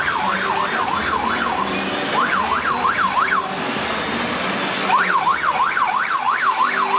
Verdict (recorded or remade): recorded